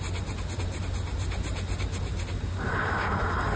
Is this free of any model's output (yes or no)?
yes